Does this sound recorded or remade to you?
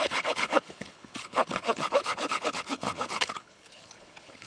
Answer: remade